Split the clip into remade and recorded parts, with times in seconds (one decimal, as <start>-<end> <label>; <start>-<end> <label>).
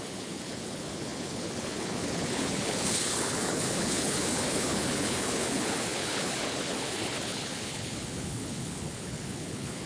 0.0-9.9 remade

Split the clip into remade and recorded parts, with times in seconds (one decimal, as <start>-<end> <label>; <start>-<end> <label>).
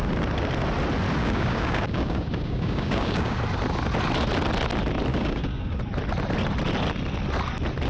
0.0-1.2 recorded; 1.2-3.4 remade; 3.4-5.1 recorded; 5.1-5.8 remade; 5.8-7.9 recorded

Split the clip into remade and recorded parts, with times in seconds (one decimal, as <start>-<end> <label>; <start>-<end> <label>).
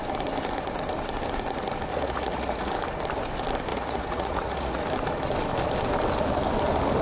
0.0-1.9 recorded; 1.9-2.7 remade; 2.7-3.7 recorded; 3.7-4.8 remade; 4.8-7.0 recorded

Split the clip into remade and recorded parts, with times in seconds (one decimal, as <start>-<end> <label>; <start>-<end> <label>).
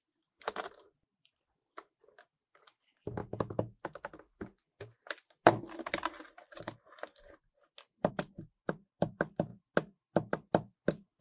0.0-3.2 remade; 3.2-8.1 recorded; 8.1-9.5 remade; 9.5-11.2 recorded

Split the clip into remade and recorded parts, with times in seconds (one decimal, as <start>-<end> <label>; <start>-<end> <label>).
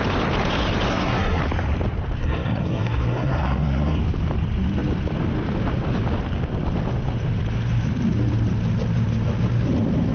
0.0-0.9 recorded; 0.9-1.4 remade; 1.4-2.2 recorded; 2.2-4.0 remade; 4.0-10.1 recorded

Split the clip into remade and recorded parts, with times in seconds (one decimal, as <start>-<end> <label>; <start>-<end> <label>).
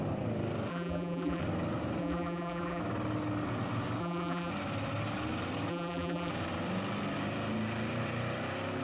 0.0-0.7 recorded; 0.7-1.4 remade; 1.4-2.0 recorded; 2.0-2.8 remade; 2.8-4.0 recorded; 4.0-4.5 remade; 4.5-5.7 recorded; 5.7-6.3 remade; 6.3-8.8 recorded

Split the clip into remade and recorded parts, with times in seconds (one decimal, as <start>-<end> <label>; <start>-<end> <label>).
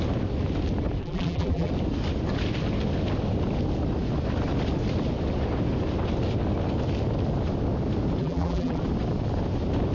0.0-1.0 recorded; 1.0-1.7 remade; 1.7-8.2 recorded; 8.2-8.8 remade; 8.8-9.9 recorded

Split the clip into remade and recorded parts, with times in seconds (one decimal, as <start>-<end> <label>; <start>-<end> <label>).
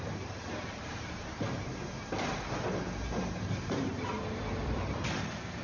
0.0-5.6 remade